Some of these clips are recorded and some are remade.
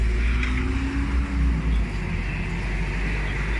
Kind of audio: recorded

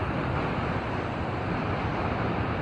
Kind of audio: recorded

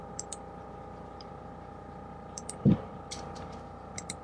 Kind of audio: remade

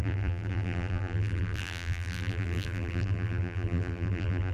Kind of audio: remade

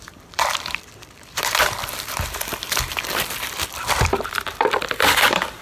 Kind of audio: remade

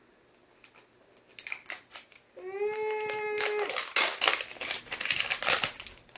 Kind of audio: recorded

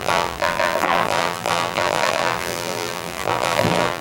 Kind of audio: remade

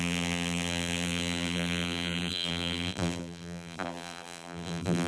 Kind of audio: remade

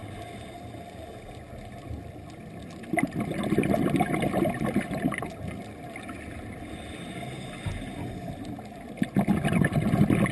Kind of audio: recorded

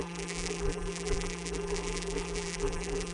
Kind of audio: remade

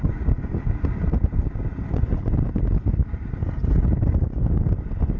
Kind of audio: recorded